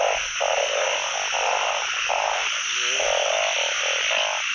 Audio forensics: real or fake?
real